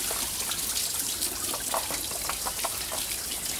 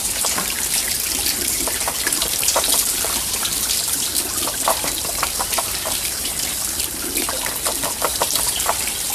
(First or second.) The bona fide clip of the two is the first